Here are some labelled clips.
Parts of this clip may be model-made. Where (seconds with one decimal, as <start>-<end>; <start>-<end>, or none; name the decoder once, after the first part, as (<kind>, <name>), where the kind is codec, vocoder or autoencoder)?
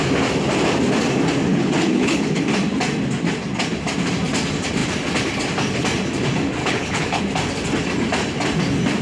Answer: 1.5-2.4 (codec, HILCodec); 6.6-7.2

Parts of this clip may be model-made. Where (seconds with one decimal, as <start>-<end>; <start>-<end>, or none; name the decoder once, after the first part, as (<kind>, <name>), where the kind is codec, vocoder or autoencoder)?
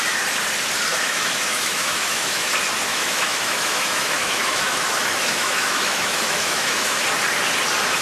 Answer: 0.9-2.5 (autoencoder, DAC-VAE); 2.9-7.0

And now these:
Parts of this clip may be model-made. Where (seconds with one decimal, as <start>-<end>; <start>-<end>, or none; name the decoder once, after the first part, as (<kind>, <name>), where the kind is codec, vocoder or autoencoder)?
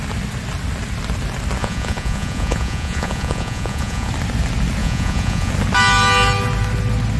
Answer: 1.6-4.1 (vocoder, Vocos); 4.8-5.5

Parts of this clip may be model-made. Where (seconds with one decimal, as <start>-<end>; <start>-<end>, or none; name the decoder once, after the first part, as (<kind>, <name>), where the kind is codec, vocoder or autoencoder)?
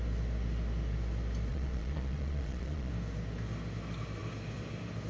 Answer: 1.5-2.9 (vocoder, Vocos)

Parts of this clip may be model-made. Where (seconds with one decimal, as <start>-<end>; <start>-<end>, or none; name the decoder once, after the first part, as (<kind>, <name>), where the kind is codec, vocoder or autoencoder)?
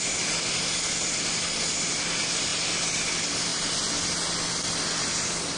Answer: none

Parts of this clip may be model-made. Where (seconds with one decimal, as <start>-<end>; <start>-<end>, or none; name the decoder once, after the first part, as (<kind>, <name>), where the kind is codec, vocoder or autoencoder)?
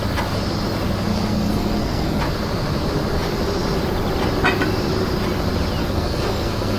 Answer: 1.1-2.2 (codec, SNAC); 5.8-6.8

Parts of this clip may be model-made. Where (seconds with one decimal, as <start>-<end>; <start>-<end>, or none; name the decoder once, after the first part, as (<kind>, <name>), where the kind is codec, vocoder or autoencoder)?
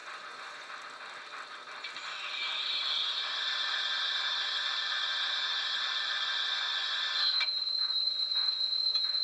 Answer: 0.0-0.7 (vocoder, Vocos); 6.1-7.2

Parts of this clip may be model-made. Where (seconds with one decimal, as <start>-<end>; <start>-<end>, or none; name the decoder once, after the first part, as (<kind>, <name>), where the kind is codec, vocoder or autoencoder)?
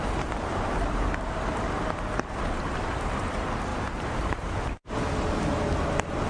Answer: 0.0-2.8 (vocoder, BigVGAN v2); 3.7-4.5